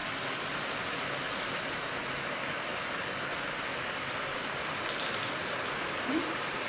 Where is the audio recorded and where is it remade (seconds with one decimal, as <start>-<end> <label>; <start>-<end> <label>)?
0.0-0.5 remade; 0.5-6.7 recorded